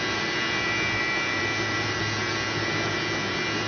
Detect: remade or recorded recorded